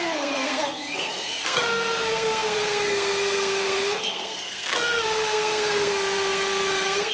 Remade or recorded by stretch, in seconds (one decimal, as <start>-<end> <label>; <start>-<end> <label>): 0.0-7.1 remade